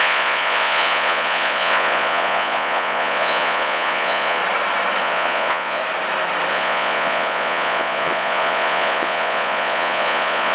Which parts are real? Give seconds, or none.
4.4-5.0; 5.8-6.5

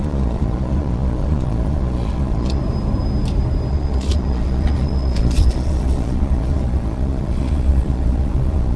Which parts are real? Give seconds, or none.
2.6-3.7

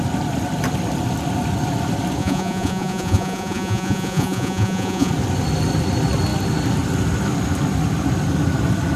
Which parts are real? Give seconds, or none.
0.0-2.2; 5.1-9.0

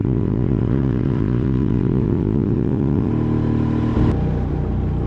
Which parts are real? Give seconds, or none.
3.1-5.1

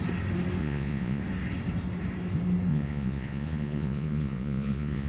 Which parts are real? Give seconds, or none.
0.0-0.6; 1.2-2.7

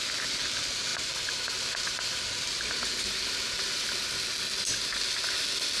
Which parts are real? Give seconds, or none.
0.0-5.8